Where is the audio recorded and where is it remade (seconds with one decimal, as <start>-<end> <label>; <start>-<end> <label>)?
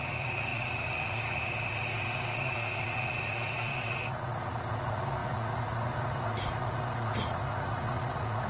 0.0-8.5 remade